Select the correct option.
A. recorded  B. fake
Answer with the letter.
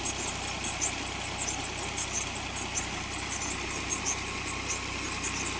A